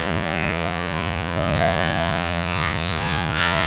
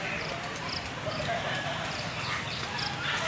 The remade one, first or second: first